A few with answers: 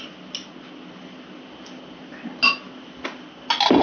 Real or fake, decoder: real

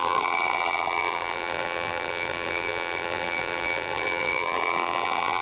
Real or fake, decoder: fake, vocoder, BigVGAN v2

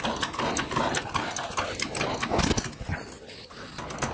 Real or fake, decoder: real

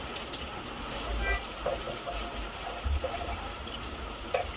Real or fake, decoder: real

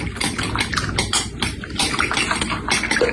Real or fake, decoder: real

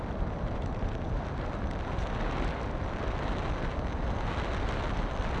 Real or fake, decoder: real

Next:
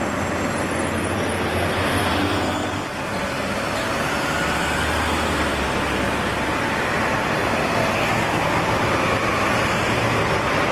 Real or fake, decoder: real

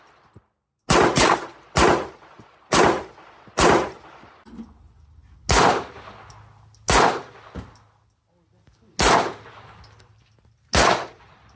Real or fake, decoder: real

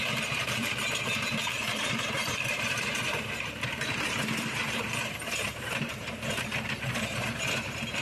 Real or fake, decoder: fake, vocoder, BigVGAN v2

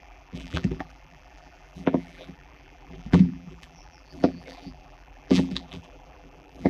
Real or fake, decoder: fake, vocoder, BigVGAN v2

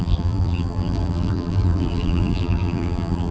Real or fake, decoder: fake, vocoder, BigVGAN v2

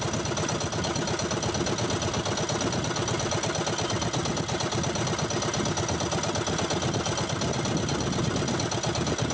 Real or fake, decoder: real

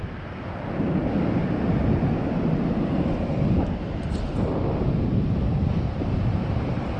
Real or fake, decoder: real